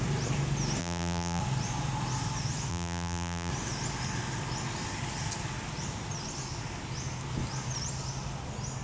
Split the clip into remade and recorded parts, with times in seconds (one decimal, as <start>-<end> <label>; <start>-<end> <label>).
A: 0.0-0.8 recorded; 0.8-1.4 remade; 1.4-2.7 recorded; 2.7-3.5 remade; 3.5-8.8 recorded